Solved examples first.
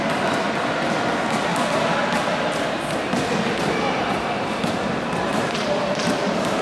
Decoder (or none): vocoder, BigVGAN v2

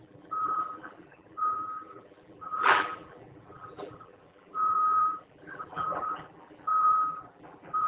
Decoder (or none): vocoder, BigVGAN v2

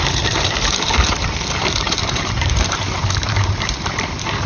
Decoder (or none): vocoder, BigVGAN v2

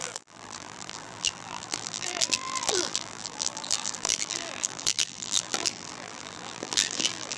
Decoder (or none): vocoder, BigVGAN v2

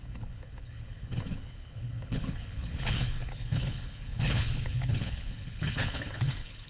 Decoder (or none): codec, HILCodec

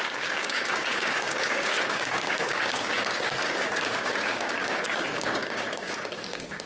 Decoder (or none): codec, DAC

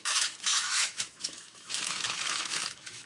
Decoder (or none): autoencoder, DAC-VAE